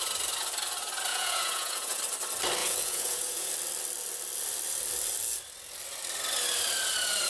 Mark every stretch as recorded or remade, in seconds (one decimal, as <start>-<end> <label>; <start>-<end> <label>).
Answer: 0.0-1.1 recorded; 1.1-2.0 remade; 2.0-2.6 recorded; 2.6-3.5 remade; 3.5-7.3 recorded